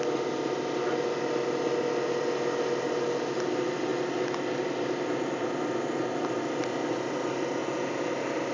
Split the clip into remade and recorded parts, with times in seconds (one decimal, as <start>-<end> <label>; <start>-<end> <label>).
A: 0.0-8.5 recorded